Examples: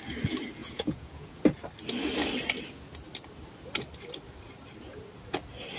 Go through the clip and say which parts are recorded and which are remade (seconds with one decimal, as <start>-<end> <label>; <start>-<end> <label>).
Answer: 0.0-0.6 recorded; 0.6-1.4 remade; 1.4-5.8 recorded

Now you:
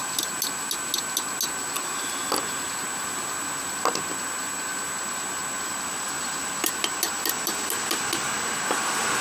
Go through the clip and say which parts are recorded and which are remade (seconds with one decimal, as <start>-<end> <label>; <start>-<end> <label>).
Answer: 0.0-9.2 recorded

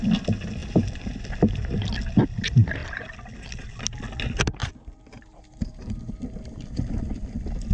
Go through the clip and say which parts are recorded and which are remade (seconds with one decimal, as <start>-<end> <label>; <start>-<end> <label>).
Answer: 0.0-0.6 recorded; 0.6-1.1 remade; 1.1-4.6 recorded; 4.6-7.0 remade; 7.0-7.7 recorded

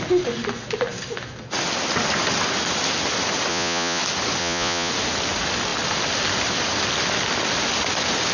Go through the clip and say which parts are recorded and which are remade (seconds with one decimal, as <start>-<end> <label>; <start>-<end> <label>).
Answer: 0.0-3.5 recorded; 3.5-4.0 remade; 4.0-4.4 recorded; 4.4-4.9 remade; 4.9-8.3 recorded

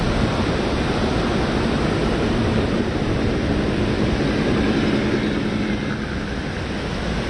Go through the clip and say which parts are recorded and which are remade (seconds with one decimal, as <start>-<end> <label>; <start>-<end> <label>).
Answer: 0.0-7.3 recorded

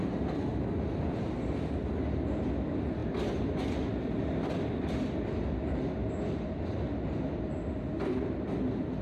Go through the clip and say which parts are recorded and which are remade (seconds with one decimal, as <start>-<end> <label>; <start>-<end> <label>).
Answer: 0.0-9.0 recorded

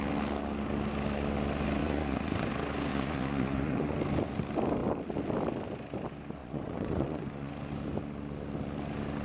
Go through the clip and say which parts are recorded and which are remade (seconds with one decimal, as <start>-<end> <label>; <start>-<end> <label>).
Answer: 0.0-1.8 recorded; 1.8-2.5 remade; 2.5-2.9 recorded; 2.9-4.0 remade; 4.0-6.4 recorded; 6.4-7.5 remade; 7.5-9.2 recorded

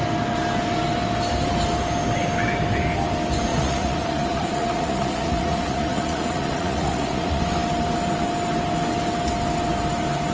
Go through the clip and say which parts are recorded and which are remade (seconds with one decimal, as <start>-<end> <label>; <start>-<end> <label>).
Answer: 0.0-3.5 recorded; 3.5-7.4 remade; 7.4-10.3 recorded